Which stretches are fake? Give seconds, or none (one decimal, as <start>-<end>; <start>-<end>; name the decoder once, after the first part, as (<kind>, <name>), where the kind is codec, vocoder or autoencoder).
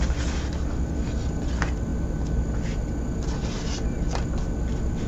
none